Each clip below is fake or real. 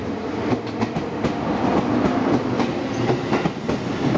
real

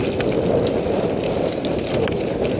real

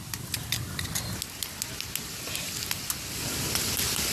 real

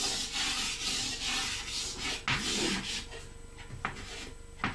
real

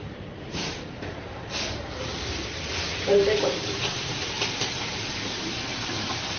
fake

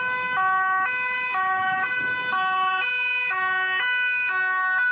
real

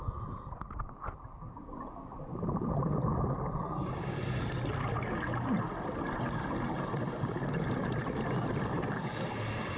real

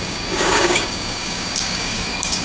fake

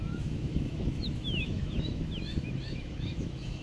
fake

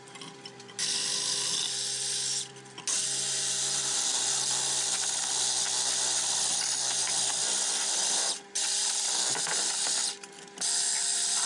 real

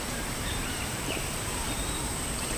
fake